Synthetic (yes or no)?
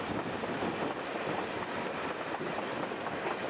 yes